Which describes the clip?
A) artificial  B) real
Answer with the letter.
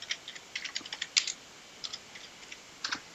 B